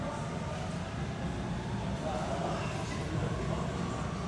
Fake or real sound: real